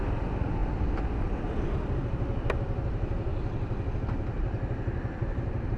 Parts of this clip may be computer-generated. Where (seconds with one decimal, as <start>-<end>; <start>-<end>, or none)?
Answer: 3.3-3.9